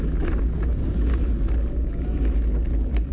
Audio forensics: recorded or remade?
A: recorded